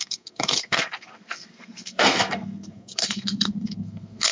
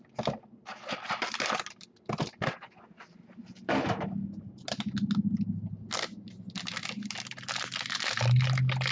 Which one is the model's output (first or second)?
first